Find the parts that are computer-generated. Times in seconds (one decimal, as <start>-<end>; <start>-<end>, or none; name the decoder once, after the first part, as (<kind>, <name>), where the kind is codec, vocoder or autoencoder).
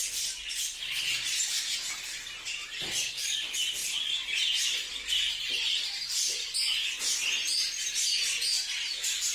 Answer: none